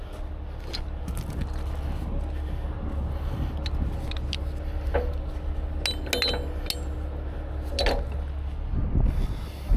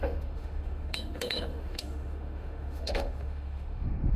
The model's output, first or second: second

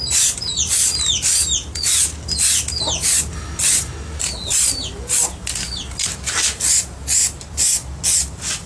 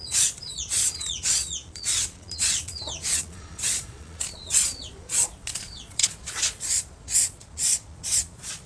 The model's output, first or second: second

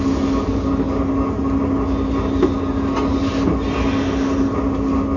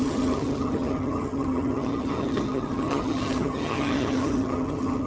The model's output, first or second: second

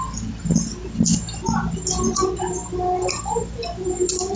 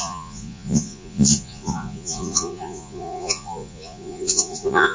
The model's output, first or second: second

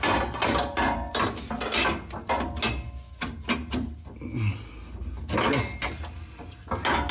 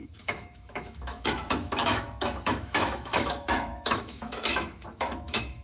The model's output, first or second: second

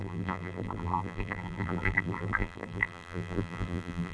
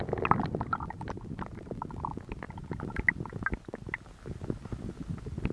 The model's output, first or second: first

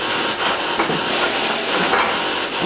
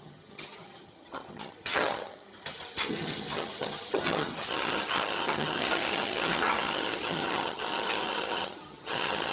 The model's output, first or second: second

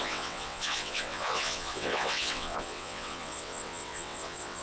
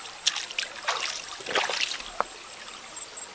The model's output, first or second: first